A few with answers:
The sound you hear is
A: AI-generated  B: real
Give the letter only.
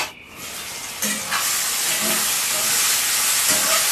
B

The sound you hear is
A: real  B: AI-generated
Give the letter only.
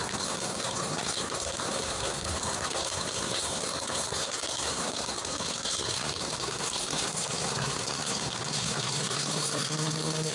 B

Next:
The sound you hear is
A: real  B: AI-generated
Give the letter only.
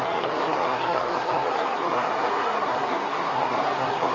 B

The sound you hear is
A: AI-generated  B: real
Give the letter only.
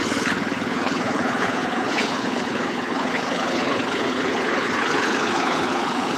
A